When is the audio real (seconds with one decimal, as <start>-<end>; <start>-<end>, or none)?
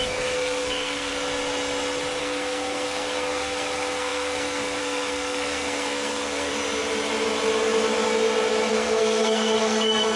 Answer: 1.1-2.2; 6.5-8.7